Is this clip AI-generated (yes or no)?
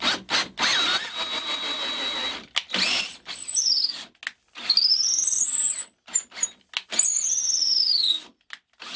no